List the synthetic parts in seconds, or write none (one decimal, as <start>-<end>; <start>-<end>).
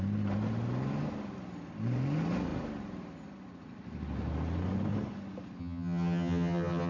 5.6-6.9